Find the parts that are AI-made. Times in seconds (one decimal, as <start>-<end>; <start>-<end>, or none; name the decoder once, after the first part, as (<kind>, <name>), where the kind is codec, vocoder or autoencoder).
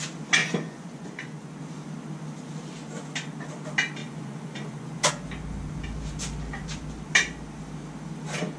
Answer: 0.4-1.6 (vocoder, Vocos); 4.0-5.1